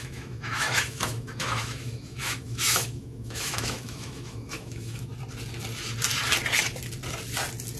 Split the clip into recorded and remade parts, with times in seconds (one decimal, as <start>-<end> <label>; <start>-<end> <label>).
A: 0.0-5.1 remade; 5.1-7.8 recorded